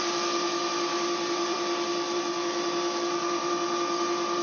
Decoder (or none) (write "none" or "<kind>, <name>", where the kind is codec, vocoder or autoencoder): vocoder, BigVGAN v2